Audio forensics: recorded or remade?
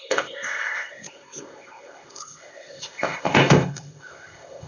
remade